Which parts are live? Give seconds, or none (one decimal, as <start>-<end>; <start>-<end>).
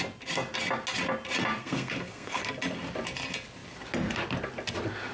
0.0-1.6; 2.4-5.1